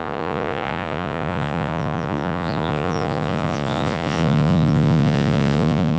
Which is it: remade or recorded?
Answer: remade